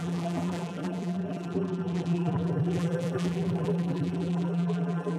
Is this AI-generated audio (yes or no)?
yes